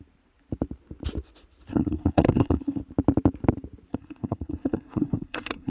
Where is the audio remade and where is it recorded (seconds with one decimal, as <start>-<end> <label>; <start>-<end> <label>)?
0.0-1.7 recorded; 1.7-2.8 remade; 2.8-3.9 recorded; 3.9-5.7 remade